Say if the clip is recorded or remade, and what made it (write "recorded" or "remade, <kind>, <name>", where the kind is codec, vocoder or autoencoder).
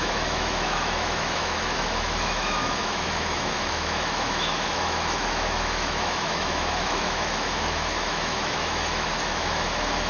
remade, autoencoder, DAC-VAE